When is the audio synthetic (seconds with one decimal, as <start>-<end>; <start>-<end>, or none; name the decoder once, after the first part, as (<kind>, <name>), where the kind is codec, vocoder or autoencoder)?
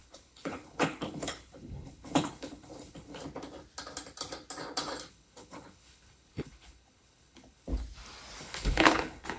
0.0-3.2 (codec, HILCodec); 5.1-7.7; 8.4-9.4